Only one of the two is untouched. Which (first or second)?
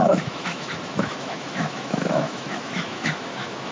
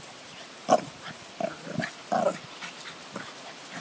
second